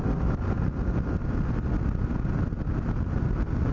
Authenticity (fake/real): real